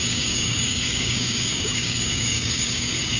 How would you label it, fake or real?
fake